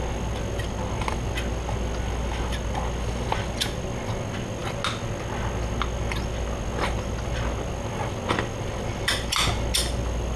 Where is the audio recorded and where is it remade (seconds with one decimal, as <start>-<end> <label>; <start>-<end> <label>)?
0.0-10.4 recorded